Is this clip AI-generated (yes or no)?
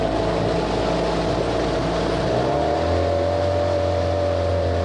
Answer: no